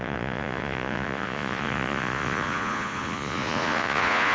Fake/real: fake